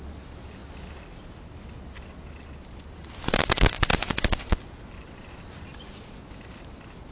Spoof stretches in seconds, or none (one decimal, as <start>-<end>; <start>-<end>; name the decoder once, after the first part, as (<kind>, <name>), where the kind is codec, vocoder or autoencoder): 3.9-4.9 (vocoder, BigVGAN v2)